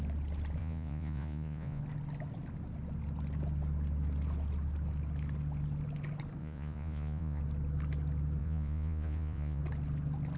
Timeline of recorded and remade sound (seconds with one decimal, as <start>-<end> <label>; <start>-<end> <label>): 0.0-0.6 recorded; 0.6-1.8 remade; 1.8-6.4 recorded; 6.4-7.4 remade; 7.4-8.4 recorded; 8.4-9.6 remade; 9.6-10.4 recorded